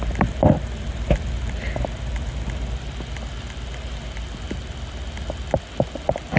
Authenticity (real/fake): real